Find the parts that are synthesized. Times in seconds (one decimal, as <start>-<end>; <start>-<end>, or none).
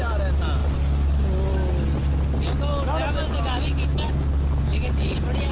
none